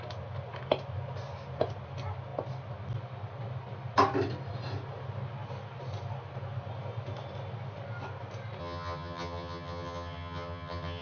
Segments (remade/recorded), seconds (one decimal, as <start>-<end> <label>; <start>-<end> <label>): 0.0-8.6 recorded; 8.6-11.0 remade